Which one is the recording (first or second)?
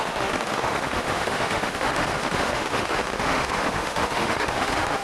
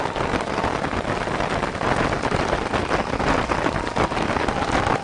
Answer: second